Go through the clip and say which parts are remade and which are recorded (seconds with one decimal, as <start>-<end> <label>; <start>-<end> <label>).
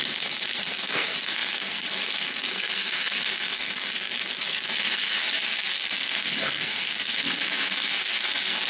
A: 0.0-8.7 remade